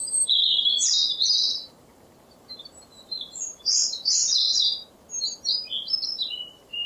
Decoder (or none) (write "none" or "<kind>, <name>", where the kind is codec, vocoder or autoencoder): vocoder, BigVGAN v2